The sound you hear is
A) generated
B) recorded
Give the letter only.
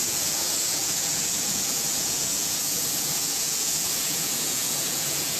A